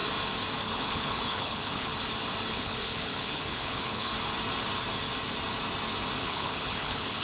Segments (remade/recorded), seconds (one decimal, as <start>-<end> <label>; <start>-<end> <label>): 0.0-0.6 recorded; 0.6-1.9 remade; 1.9-2.5 recorded; 2.5-4.1 remade; 4.1-6.2 recorded; 6.2-7.2 remade